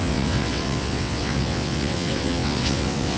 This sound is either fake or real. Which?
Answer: fake